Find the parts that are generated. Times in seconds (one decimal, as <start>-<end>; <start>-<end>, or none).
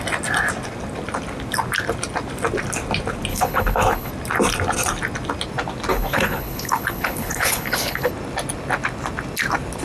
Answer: 3.3-4.1; 5.9-8.1